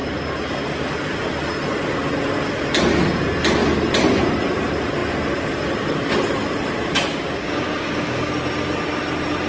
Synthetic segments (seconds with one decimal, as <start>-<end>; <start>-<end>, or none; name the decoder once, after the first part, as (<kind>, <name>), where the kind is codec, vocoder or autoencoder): 7.1-8.3 (codec, DAC)